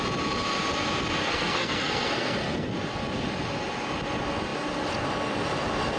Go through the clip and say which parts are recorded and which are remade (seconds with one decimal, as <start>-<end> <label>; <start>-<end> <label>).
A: 0.0-1.2 recorded; 1.2-2.7 remade; 2.7-6.0 recorded